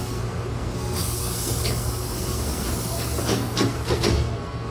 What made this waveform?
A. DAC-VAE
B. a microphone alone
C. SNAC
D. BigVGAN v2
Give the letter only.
C